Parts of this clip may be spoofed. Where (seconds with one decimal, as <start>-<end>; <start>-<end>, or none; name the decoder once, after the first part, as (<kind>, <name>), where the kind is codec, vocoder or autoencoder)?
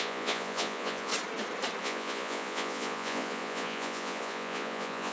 0.0-1.1 (vocoder, Vocos); 1.8-5.1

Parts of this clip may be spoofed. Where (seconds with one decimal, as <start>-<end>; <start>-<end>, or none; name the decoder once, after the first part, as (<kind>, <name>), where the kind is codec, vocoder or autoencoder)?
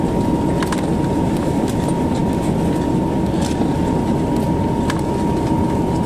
none